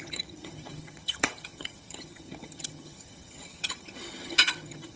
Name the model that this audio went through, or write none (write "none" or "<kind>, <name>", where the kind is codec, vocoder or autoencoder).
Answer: vocoder, HiFi-GAN